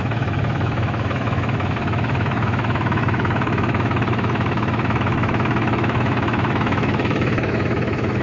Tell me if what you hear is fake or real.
fake